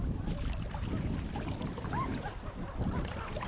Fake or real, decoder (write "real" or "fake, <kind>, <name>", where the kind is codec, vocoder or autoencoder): fake, vocoder, BigVGAN v2